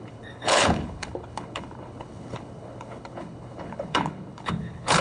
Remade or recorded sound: remade